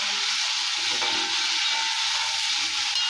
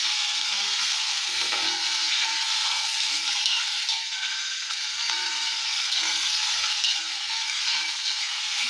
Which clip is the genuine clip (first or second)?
first